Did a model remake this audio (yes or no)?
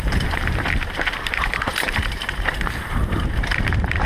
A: yes